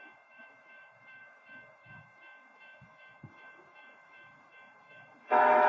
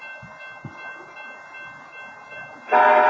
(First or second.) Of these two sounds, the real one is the second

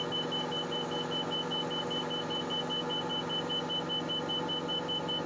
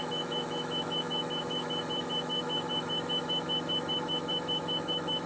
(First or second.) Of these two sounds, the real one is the first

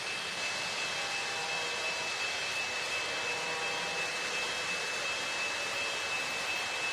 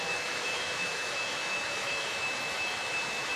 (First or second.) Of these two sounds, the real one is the first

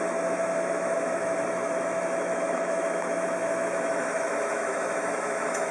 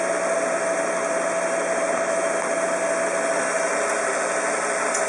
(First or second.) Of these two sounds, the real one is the second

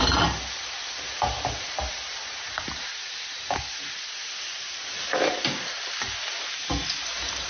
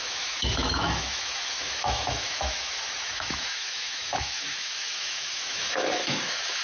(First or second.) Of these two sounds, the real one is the first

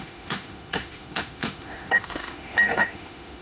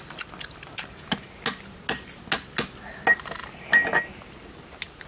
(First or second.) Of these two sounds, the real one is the second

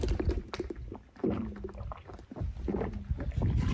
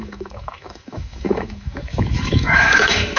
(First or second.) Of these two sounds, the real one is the first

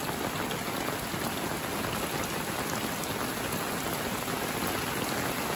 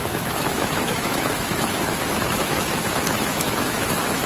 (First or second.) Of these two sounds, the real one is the first